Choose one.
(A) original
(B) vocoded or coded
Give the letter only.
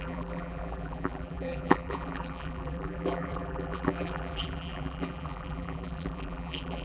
B